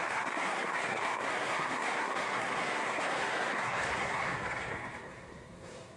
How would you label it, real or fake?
fake